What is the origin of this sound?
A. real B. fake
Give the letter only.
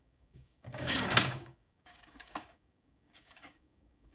B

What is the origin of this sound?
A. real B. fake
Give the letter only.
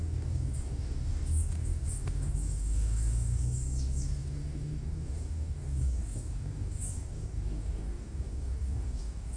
B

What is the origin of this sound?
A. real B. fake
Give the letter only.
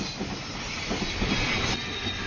A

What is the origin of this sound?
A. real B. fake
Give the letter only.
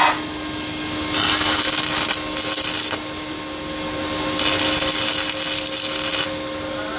A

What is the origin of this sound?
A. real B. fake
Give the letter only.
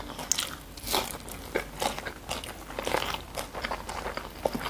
A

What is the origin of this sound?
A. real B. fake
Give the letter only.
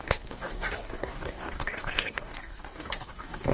B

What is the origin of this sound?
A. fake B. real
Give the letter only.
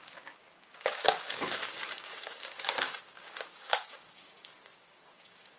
A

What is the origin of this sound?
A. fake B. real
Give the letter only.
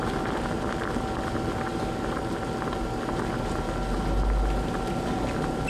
B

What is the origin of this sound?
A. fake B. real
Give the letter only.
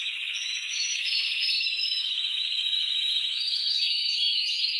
A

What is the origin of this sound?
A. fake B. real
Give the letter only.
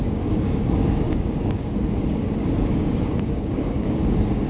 A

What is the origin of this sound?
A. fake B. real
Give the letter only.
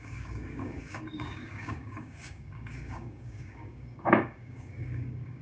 A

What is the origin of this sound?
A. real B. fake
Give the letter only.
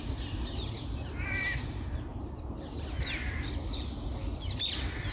A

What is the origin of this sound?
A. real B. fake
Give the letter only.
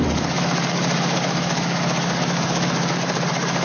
B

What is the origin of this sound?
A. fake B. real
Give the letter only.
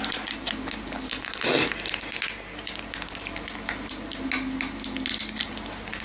B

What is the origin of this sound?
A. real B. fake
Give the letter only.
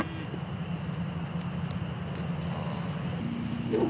A